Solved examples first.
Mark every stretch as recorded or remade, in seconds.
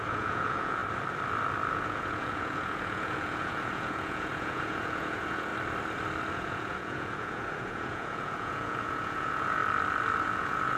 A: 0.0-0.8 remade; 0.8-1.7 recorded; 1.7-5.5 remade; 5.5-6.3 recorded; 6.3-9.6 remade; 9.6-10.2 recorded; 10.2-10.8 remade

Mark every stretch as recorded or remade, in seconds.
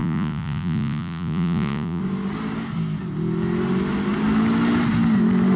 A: 0.0-2.0 remade; 2.0-5.6 recorded